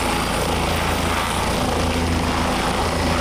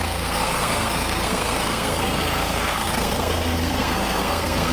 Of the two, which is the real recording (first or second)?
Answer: first